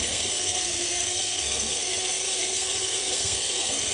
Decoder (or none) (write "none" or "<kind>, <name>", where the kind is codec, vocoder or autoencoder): codec, SNAC